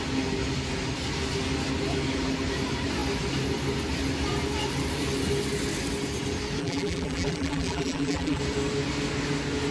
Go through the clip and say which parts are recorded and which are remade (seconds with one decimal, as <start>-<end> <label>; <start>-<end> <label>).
0.0-6.6 recorded; 6.6-8.4 remade; 8.4-9.7 recorded

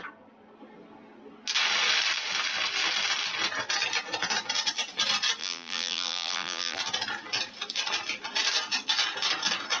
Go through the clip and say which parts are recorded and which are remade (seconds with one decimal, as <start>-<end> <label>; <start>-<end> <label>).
0.0-5.4 recorded; 5.4-6.8 remade; 6.8-9.8 recorded

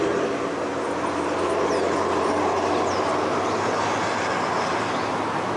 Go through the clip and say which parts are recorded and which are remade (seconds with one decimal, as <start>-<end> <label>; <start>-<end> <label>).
0.0-5.6 recorded

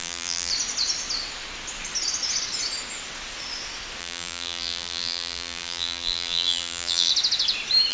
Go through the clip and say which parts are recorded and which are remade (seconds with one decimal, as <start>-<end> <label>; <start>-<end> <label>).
0.0-0.5 remade; 0.5-4.0 recorded; 4.0-7.1 remade; 7.1-7.9 recorded

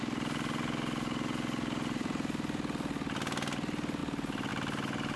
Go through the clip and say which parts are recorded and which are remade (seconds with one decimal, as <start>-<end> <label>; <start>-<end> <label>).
0.0-5.2 recorded

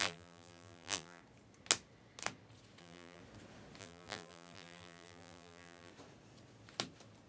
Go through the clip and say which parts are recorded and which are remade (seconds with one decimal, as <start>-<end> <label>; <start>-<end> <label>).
0.0-1.2 remade; 1.2-2.8 recorded; 2.8-3.2 remade; 3.2-3.8 recorded; 3.8-5.9 remade; 5.9-7.3 recorded